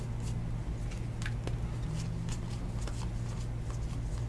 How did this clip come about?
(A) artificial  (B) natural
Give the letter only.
B